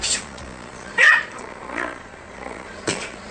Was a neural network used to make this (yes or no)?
yes